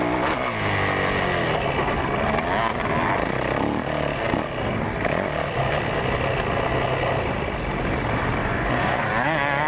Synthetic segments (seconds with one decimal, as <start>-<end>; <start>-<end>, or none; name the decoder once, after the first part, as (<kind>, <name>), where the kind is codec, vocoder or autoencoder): 8.4-9.1 (vocoder, Vocos)